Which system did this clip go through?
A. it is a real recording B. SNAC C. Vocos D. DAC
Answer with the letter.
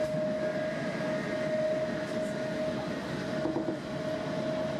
A